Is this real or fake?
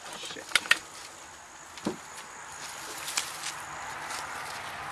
real